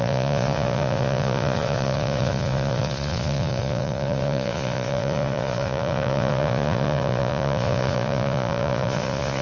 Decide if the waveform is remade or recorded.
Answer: remade